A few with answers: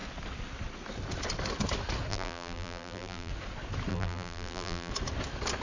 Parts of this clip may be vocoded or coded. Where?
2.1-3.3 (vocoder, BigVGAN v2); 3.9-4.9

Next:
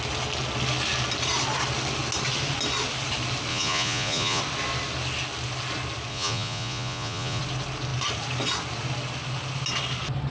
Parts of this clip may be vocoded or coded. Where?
3.5-4.4 (vocoder, Vocos); 6.1-7.4

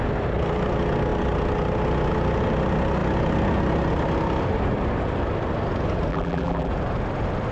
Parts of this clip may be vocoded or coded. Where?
6.1-6.7 (vocoder, BigVGAN v2)

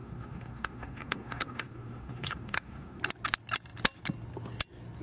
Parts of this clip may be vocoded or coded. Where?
0.0-3.0 (codec, SNAC)

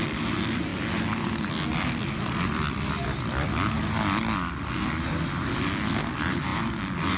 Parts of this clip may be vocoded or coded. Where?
none

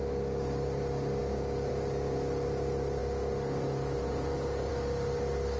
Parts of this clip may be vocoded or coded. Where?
none